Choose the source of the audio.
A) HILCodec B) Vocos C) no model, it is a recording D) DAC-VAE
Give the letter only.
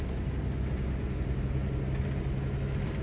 C